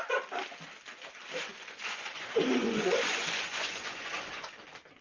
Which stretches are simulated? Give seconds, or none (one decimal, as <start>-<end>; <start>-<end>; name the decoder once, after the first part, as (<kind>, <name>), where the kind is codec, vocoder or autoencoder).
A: 1.5-4.5 (vocoder, Vocos)